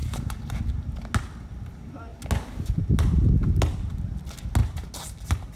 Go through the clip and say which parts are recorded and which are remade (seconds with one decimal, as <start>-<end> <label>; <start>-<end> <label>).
0.0-0.5 remade; 0.5-5.6 recorded